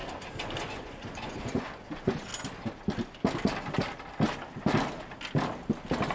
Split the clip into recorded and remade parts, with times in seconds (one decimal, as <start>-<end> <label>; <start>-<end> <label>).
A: 0.0-0.7 recorded; 0.7-2.3 remade; 2.3-6.1 recorded